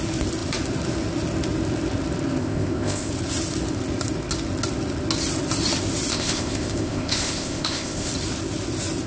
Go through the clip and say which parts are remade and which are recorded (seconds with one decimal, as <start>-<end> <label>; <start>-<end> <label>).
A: 0.0-2.4 recorded; 2.4-3.1 remade; 3.1-6.1 recorded; 6.1-8.1 remade; 8.1-9.1 recorded